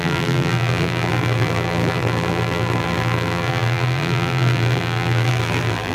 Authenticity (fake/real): fake